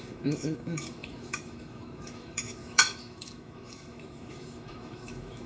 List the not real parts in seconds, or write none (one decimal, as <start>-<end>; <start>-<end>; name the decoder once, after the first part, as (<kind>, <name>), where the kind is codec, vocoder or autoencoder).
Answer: 0.0-5.5 (autoencoder, DAC-VAE)